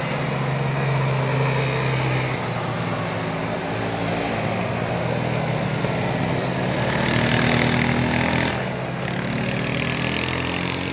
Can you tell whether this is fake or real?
real